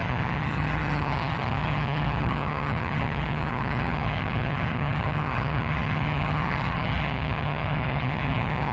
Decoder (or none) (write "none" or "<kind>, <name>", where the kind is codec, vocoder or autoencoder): vocoder, HiFi-GAN